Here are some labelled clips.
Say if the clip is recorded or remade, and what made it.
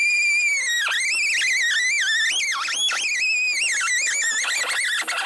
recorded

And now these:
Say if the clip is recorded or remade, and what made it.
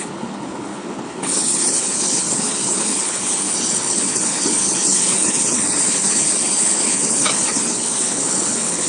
remade, codec, HILCodec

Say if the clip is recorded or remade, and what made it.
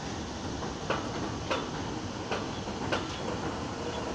recorded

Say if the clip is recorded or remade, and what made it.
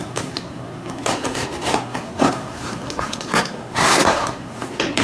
remade, codec, SNAC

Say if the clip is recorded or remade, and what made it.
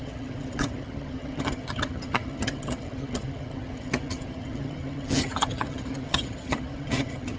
remade, vocoder, HiFi-GAN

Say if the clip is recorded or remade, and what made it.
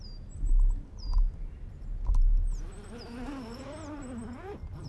recorded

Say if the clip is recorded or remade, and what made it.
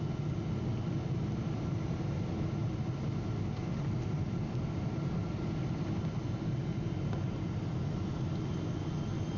recorded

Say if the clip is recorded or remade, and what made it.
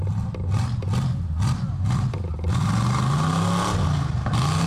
recorded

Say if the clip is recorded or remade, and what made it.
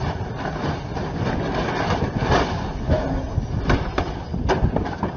recorded